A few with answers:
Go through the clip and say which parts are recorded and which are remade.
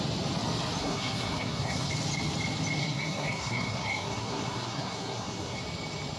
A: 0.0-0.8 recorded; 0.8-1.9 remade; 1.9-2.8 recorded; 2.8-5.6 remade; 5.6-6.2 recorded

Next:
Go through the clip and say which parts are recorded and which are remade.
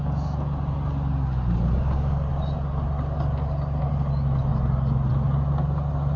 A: 0.0-6.2 recorded